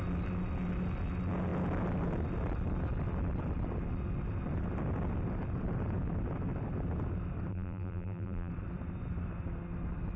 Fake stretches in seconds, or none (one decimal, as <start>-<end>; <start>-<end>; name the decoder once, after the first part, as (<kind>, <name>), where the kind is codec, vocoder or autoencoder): 7.5-8.5 (vocoder, BigVGAN v2)